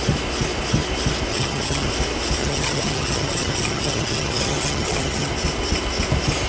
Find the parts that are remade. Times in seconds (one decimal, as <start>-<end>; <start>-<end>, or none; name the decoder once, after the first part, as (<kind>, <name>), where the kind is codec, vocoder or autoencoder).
1.3-1.9 (vocoder, HiFi-GAN); 2.4-5.3